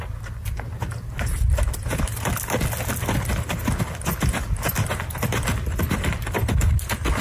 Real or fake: real